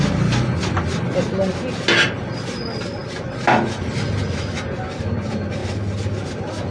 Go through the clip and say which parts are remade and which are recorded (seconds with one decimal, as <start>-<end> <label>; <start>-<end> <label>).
0.0-6.7 recorded